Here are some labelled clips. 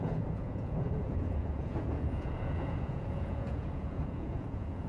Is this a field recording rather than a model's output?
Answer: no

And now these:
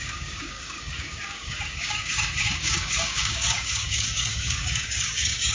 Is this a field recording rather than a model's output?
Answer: no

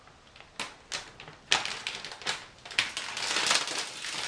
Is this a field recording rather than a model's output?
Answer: yes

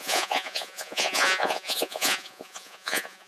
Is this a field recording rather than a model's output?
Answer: no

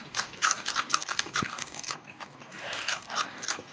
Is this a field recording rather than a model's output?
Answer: no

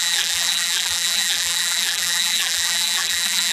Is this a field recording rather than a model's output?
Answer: no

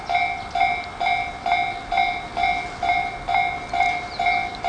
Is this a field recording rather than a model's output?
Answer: yes